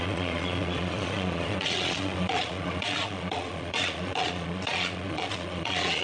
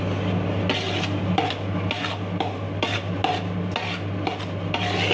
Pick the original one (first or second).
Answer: second